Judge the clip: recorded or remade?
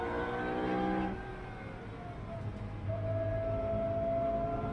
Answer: recorded